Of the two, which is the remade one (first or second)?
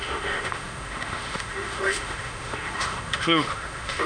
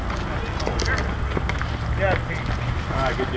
first